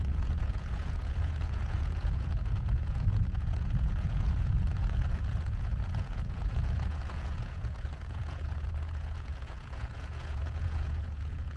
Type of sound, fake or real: fake